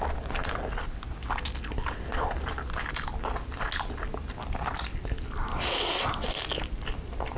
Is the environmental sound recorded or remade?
recorded